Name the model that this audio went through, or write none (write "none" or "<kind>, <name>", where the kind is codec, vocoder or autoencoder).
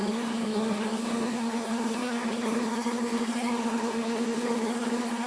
codec, SNAC